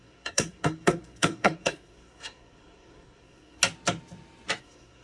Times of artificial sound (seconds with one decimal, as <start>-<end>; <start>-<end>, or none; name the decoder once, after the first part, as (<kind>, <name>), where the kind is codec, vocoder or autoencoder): 0.0-3.6 (codec, SNAC); 4.6-5.0